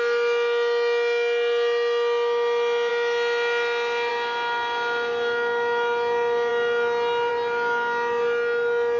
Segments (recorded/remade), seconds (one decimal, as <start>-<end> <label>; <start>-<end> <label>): 0.0-9.0 recorded